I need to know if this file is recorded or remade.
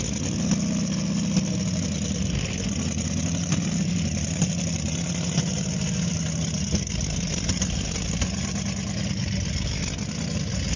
recorded